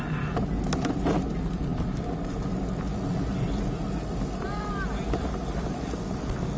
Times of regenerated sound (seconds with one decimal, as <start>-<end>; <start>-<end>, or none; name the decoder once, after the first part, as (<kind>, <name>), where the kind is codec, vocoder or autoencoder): none